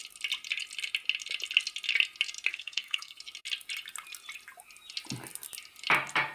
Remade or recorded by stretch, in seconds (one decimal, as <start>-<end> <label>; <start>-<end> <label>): 0.0-2.5 recorded; 2.5-3.2 remade; 3.2-6.3 recorded